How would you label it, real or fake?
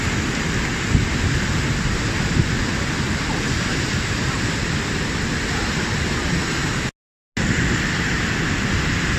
real